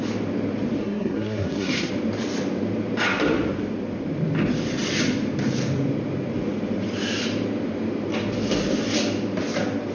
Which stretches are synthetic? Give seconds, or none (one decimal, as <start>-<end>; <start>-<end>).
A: 0.8-1.9